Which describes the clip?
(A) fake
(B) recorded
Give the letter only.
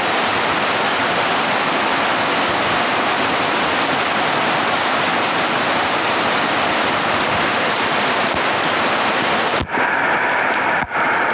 B